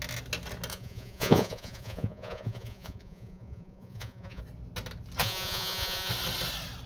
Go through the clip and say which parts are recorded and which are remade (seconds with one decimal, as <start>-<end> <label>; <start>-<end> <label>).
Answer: 0.0-0.7 recorded; 0.7-4.4 remade; 4.4-5.2 recorded; 5.2-6.1 remade; 6.1-6.9 recorded